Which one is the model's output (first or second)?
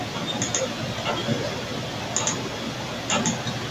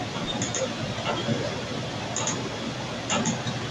second